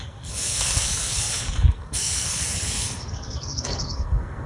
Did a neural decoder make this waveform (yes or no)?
yes